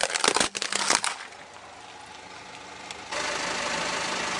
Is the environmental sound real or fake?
real